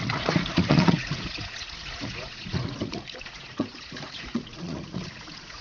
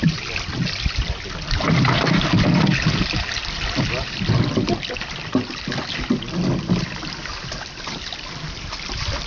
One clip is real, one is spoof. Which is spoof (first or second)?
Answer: first